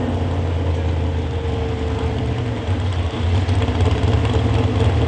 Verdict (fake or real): real